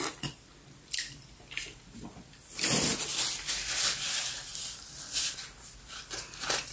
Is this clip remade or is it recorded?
recorded